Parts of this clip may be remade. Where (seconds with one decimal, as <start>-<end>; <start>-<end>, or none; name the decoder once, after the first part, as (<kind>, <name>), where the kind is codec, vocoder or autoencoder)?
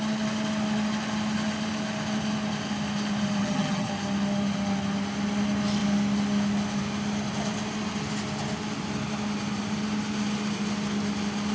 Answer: 3.4-3.9 (vocoder, HiFi-GAN)